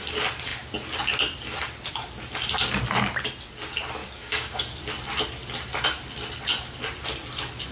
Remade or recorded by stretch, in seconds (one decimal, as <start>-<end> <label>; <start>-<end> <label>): 0.0-4.0 recorded; 4.0-4.6 remade; 4.6-7.7 recorded